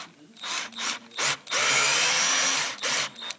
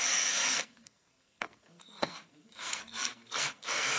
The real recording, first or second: first